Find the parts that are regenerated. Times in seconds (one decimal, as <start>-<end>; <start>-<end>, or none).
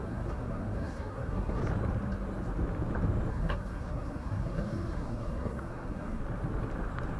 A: 0.0-1.6; 3.3-6.2